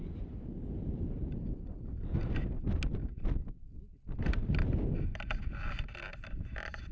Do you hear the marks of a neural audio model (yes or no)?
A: no